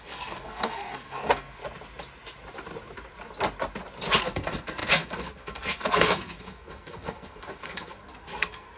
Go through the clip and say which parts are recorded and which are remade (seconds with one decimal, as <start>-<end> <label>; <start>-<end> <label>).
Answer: 0.0-1.6 remade; 1.6-4.2 recorded; 4.2-8.8 remade